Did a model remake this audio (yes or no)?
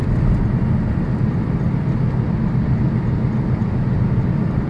no